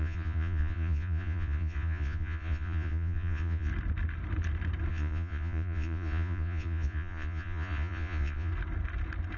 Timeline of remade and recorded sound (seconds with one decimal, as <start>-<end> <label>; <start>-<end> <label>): 0.0-3.7 remade; 3.7-4.9 recorded; 4.9-8.5 remade; 8.5-9.4 recorded

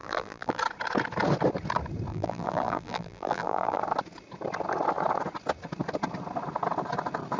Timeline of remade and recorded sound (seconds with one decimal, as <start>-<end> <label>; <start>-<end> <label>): 0.0-0.6 remade; 0.6-2.1 recorded; 2.1-3.8 remade; 3.8-7.4 recorded

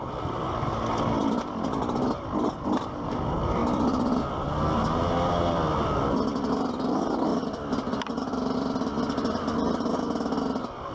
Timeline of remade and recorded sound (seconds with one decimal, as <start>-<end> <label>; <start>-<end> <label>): 0.0-1.2 recorded; 1.2-2.1 remade; 2.1-3.6 recorded; 3.6-4.2 remade; 4.2-7.3 recorded; 7.3-9.9 remade; 9.9-10.9 recorded

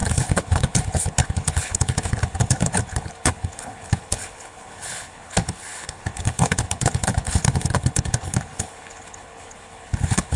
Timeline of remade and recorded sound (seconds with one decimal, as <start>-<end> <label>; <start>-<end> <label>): 0.0-10.4 remade

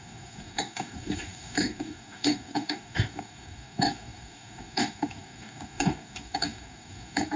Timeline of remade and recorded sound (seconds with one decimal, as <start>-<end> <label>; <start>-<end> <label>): 0.0-7.4 remade

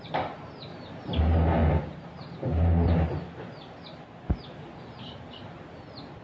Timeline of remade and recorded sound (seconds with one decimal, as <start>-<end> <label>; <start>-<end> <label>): 0.0-6.2 recorded